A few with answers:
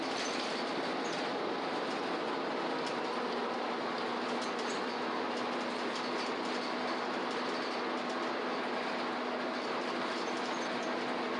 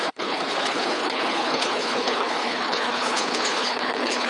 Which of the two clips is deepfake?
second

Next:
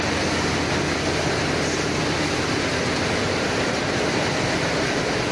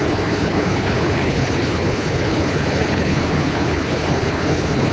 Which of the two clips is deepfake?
second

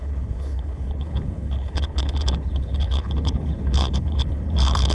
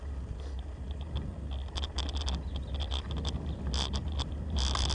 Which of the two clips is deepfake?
first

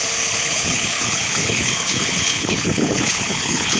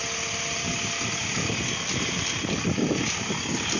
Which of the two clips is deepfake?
first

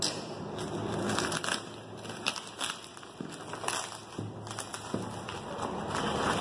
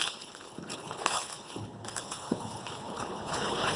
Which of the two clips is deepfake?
second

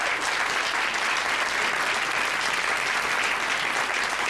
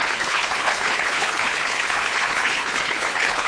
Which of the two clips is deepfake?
second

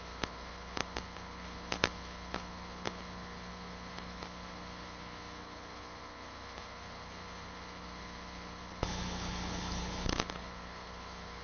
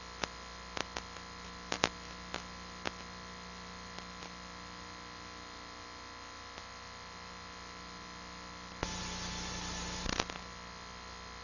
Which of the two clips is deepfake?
first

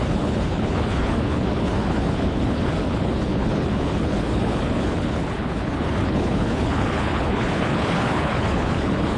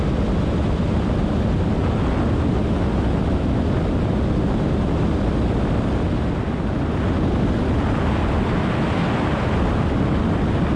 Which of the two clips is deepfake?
first